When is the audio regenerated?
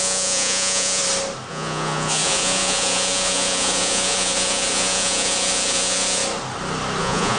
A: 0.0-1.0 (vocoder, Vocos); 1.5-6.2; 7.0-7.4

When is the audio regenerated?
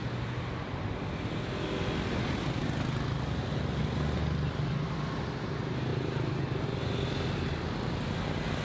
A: none